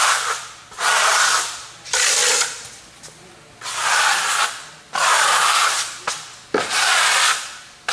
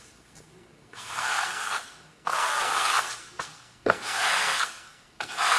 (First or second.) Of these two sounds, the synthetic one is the second